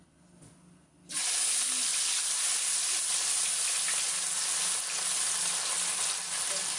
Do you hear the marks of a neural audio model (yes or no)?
no